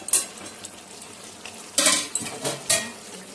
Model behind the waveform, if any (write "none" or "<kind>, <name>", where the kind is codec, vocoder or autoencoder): none